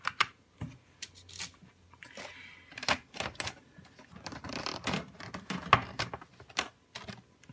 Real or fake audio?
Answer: real